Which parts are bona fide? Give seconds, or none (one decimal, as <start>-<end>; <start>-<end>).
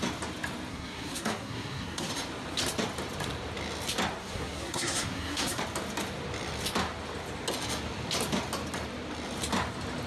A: 0.0-0.7; 2.1-4.2; 5.6-10.1